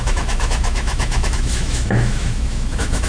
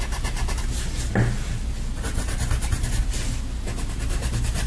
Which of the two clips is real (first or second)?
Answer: second